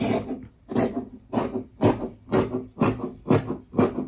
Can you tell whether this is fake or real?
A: real